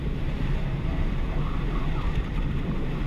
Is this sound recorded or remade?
remade